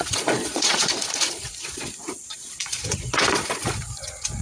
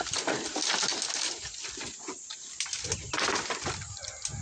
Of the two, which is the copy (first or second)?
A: first